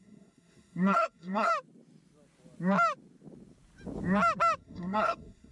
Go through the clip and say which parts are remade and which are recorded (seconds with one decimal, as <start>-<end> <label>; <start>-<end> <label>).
0.0-1.5 remade; 1.5-4.6 recorded; 4.6-5.5 remade

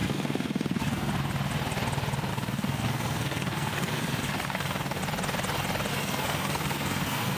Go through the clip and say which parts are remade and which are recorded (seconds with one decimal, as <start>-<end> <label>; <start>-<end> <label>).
0.0-1.1 remade; 1.1-2.3 recorded; 2.3-5.0 remade; 5.0-5.9 recorded; 5.9-7.4 remade

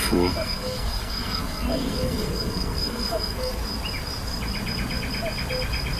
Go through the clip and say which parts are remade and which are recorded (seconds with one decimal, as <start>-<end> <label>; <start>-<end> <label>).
0.0-3.6 remade; 3.6-6.0 recorded

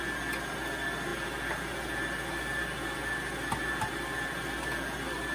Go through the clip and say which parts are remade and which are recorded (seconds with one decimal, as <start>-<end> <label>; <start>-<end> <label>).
0.0-5.3 recorded

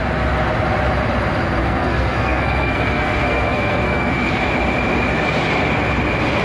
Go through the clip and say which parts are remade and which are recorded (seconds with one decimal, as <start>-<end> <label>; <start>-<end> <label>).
0.0-1.6 recorded; 1.6-4.3 remade; 4.3-6.4 recorded

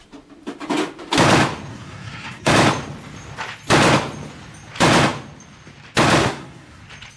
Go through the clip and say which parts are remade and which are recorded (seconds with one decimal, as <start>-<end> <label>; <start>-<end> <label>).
0.0-1.7 recorded; 1.7-2.5 remade; 2.5-6.2 recorded; 6.2-6.8 remade; 6.8-7.2 recorded

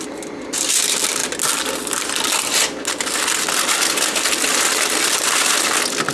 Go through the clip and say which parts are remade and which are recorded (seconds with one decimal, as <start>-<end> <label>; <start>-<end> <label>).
0.0-6.1 recorded